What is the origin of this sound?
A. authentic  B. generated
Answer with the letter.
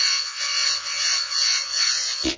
B